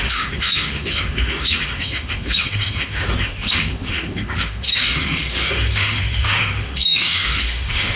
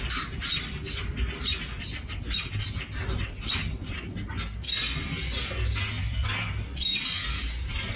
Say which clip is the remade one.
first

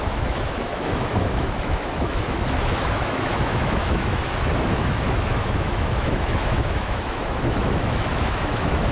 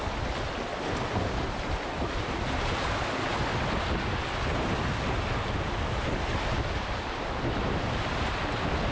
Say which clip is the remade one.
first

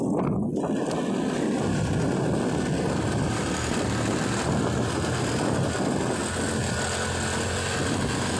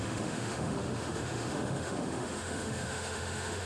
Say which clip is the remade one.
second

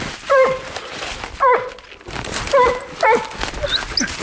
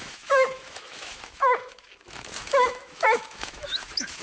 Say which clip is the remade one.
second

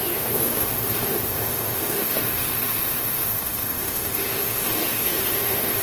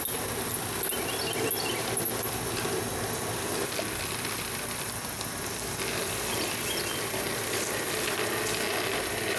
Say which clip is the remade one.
first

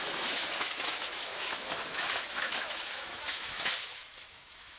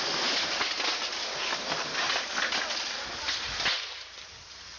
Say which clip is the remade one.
first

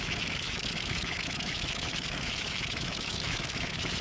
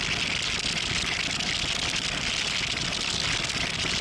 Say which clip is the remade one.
first